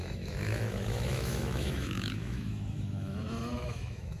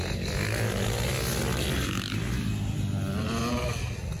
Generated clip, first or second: first